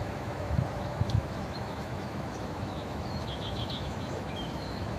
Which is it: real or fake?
fake